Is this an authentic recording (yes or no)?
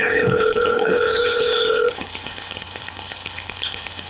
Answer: no